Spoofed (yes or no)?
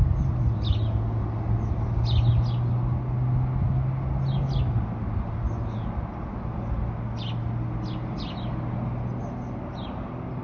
no